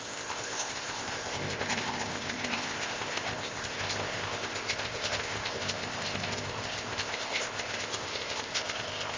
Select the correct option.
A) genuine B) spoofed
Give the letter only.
B